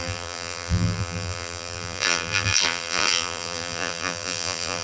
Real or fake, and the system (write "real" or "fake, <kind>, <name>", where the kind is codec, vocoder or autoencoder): fake, vocoder, BigVGAN v2